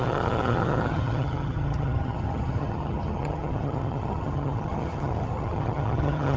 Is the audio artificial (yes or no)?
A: yes